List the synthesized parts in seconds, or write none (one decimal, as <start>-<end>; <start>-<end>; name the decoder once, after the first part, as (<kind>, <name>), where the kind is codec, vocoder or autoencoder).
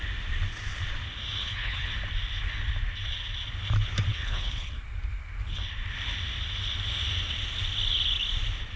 1.4-1.9 (codec, HILCodec); 4.1-4.7